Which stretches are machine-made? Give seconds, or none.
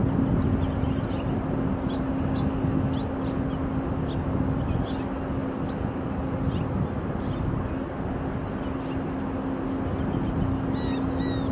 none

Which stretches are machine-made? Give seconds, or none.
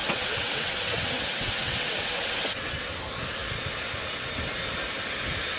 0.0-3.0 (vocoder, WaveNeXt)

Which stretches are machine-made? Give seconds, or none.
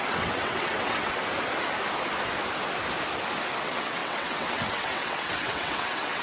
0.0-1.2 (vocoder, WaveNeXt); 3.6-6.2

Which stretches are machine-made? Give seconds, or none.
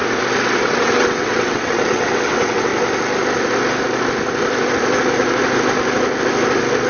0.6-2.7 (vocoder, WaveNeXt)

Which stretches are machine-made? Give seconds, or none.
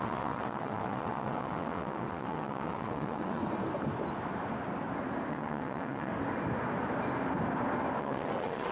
0.0-3.4 (vocoder, WaveNeXt); 5.3-6.1; 8.0-8.7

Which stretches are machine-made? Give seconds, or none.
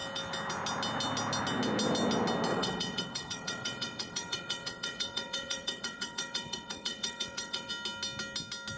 2.5-7.7 (vocoder, WaveNeXt)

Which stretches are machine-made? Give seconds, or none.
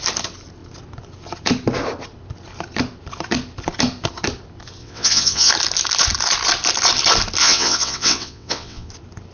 4.8-5.5 (vocoder, WaveNeXt); 7.4-8.9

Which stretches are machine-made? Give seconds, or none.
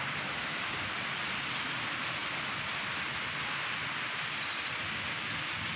none